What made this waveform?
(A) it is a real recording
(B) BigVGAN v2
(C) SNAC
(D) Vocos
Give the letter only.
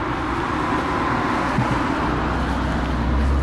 A